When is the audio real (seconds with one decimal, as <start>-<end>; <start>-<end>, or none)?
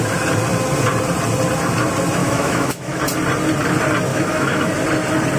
0.0-2.2; 3.0-4.1; 4.7-5.4